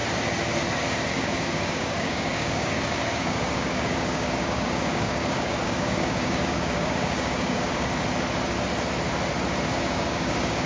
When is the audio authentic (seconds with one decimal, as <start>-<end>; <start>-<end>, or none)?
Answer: 0.0-1.1; 7.9-9.7

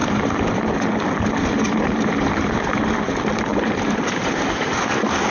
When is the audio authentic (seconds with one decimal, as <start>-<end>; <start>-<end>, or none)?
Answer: 0.5-3.5; 4.8-5.3

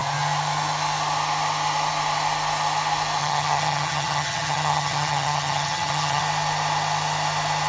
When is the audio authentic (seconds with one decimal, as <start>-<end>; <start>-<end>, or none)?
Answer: 0.0-3.2; 6.2-7.7

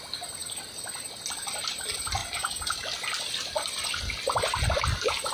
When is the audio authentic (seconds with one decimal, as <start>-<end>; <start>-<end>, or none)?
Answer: 0.0-5.3